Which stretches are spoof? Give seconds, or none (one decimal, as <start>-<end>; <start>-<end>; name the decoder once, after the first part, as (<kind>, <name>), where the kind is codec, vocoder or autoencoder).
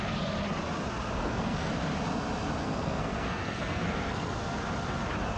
1.2-1.7 (codec, SNAC); 2.6-4.3